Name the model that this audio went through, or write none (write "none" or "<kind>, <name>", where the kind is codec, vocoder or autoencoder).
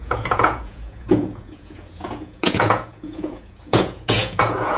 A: vocoder, Vocos